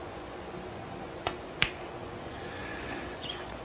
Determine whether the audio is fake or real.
fake